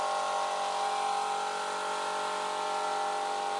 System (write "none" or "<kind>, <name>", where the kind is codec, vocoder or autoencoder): none